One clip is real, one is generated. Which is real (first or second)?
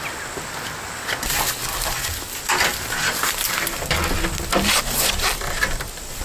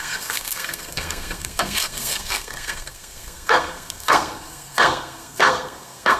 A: first